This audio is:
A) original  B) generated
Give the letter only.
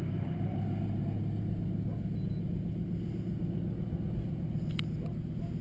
A